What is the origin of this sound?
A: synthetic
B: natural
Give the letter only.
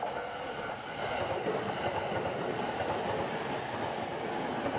B